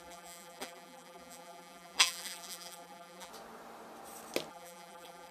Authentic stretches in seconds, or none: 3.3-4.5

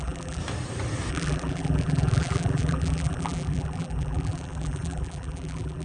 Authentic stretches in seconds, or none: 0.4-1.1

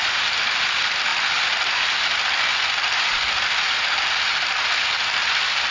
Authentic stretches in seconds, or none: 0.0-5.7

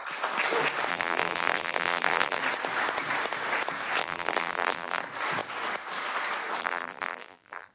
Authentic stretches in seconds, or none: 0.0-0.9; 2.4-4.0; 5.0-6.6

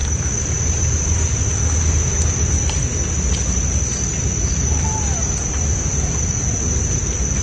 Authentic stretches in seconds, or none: 0.9-7.4